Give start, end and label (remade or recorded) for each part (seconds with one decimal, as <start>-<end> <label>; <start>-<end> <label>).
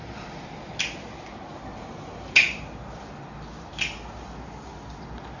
0.0-5.4 recorded